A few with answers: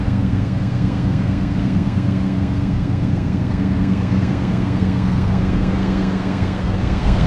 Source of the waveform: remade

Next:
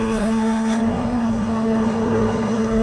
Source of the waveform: remade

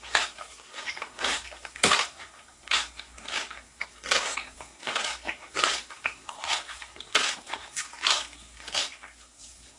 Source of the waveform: remade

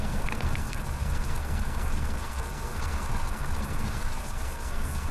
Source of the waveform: remade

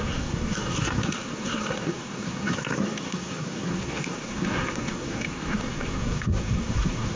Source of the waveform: remade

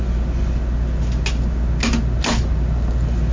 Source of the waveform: recorded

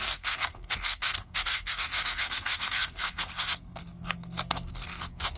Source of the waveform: remade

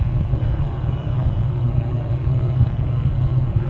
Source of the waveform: remade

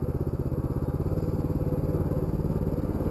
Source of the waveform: recorded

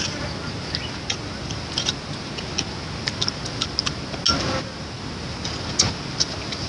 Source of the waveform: recorded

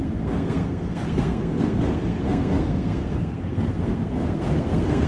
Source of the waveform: remade